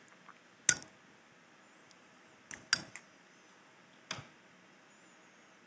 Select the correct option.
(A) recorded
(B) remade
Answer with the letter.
A